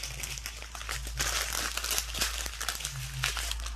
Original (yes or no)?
yes